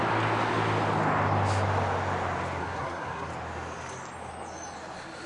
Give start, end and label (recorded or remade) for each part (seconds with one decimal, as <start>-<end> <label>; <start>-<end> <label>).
0.0-2.6 recorded; 2.6-3.3 remade; 3.3-5.3 recorded